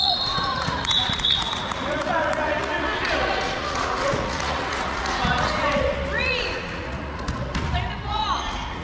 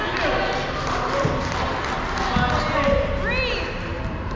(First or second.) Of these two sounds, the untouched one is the second